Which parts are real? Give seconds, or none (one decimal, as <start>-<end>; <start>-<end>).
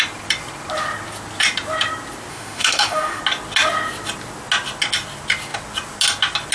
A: 0.0-2.3; 3.2-6.5